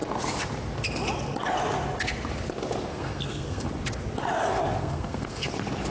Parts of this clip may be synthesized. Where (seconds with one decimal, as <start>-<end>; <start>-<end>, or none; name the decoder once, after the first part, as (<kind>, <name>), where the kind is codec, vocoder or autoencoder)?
2.9-3.7 (codec, SNAC); 4.8-5.5